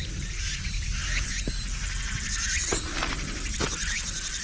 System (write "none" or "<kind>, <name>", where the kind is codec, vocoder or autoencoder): none